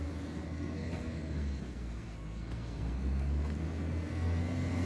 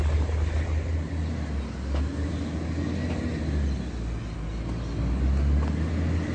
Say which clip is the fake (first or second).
first